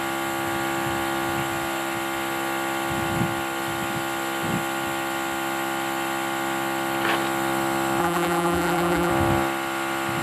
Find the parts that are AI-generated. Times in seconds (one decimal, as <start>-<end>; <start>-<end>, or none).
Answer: 8.0-9.1